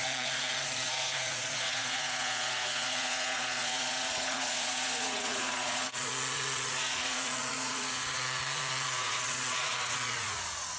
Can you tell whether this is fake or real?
fake